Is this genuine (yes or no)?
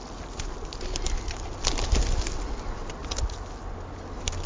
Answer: yes